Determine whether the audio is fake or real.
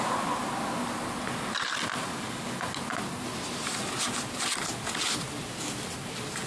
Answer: real